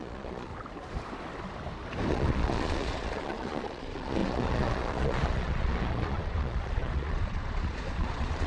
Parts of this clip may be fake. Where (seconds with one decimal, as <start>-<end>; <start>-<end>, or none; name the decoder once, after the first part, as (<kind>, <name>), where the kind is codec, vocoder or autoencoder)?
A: 0.0-0.5 (vocoder, Vocos); 2.1-8.5